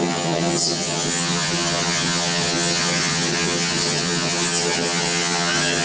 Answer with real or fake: fake